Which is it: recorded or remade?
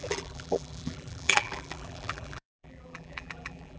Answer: remade